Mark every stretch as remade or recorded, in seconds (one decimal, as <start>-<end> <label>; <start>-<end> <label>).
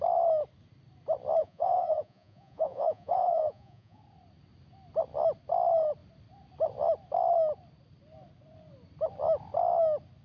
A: 0.0-1.4 recorded; 1.4-4.0 remade; 4.0-10.2 recorded